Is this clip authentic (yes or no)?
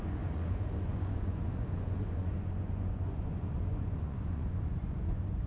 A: no